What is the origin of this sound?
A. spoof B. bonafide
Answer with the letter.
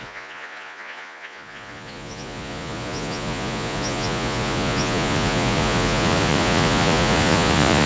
A